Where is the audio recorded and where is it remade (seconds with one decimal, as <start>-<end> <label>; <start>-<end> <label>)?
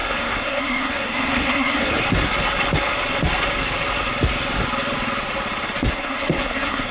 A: 0.0-1.9 remade; 1.9-5.9 recorded; 5.9-6.9 remade